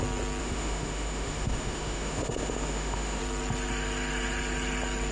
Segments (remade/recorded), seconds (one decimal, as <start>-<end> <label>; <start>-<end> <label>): 0.0-0.4 recorded; 0.4-3.2 remade; 3.2-5.1 recorded